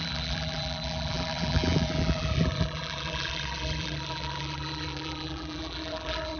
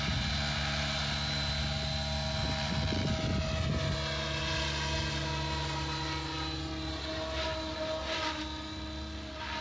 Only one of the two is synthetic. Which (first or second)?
first